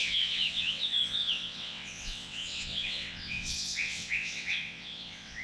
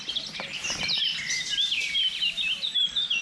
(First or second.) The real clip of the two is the second